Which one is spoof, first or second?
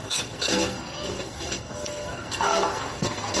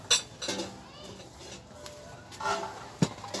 first